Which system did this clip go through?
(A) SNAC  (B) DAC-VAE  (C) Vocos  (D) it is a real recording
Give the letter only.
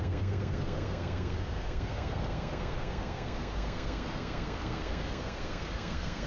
A